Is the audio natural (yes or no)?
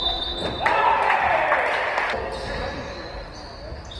yes